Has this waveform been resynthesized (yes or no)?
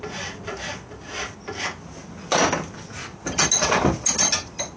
no